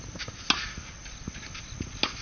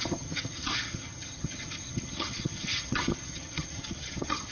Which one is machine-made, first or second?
second